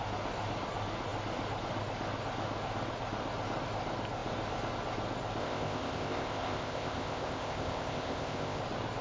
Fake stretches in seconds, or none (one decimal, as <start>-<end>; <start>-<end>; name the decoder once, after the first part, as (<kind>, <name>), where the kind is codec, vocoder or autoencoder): 5.4-8.6 (codec, ZipCodec)